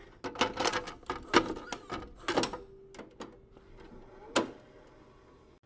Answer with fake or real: real